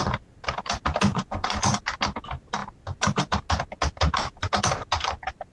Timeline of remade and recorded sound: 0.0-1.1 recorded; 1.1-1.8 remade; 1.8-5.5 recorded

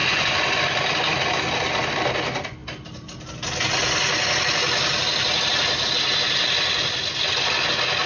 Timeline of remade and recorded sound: 0.0-0.6 remade; 0.6-8.1 recorded

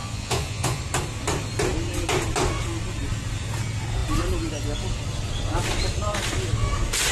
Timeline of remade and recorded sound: 0.0-0.8 remade; 0.8-7.1 recorded

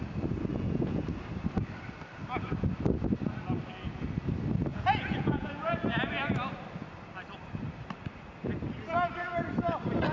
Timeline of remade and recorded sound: 0.0-0.5 recorded; 0.5-1.0 remade; 1.0-4.7 recorded; 4.7-5.7 remade; 5.7-10.1 recorded

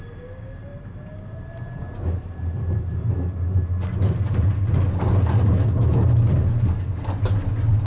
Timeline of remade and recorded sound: 0.0-7.9 recorded